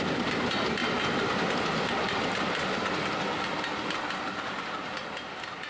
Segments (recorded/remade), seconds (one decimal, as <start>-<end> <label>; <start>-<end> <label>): 0.0-5.7 recorded